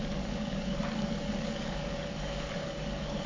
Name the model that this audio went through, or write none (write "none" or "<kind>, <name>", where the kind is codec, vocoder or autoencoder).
codec, DAC